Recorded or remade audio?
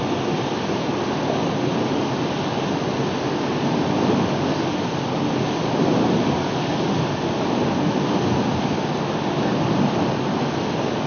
recorded